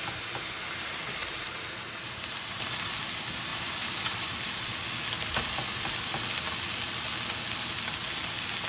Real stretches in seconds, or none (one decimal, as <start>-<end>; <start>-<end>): 0.0-1.2; 2.7-3.5; 4.6-8.7